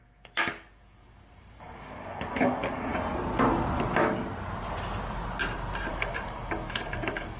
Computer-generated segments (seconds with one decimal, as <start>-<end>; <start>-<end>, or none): 0.0-2.9; 5.9-7.4